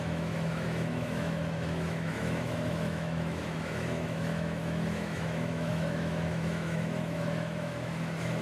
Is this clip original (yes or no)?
no